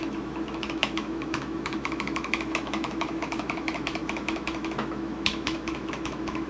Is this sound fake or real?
fake